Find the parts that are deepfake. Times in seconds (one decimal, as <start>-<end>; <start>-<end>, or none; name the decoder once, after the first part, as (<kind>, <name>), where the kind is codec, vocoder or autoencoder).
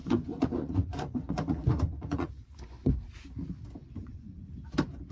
0.0-2.9 (vocoder, Vocos); 3.8-4.4